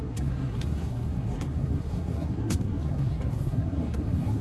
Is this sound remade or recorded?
remade